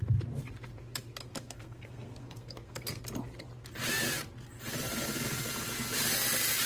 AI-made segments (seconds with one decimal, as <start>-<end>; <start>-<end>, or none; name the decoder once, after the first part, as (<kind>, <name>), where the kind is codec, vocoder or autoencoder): 1.2-3.0 (codec, SNAC)